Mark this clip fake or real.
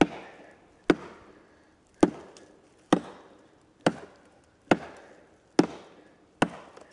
real